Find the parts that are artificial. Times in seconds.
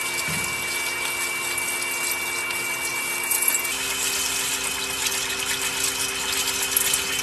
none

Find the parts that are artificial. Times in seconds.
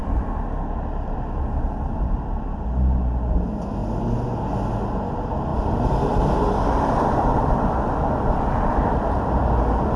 0.0-3.0; 5.5-9.6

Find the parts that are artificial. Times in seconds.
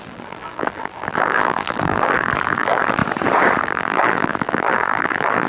0.0-3.0; 3.6-5.5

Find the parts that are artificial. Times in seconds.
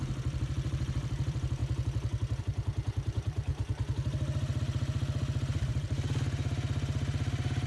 0.0-1.6; 2.4-3.5; 4.6-7.7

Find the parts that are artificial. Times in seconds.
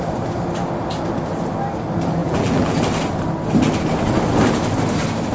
2.2-2.8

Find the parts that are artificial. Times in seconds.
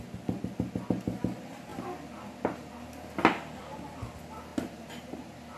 4.5-5.6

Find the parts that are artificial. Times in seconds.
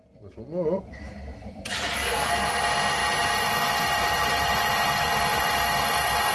1.3-2.1; 3.0-4.5; 5.3-6.3